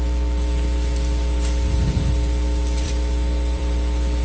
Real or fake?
fake